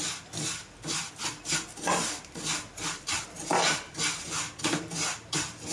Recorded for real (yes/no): yes